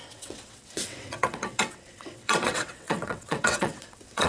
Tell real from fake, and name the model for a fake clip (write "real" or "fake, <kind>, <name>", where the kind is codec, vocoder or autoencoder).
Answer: fake, vocoder, WaveNeXt